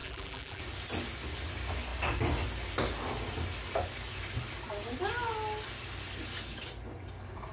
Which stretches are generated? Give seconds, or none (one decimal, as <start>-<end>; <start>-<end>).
0.0-0.6